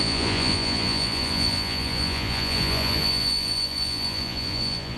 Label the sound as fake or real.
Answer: fake